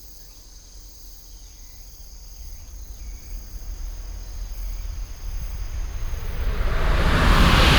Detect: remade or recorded remade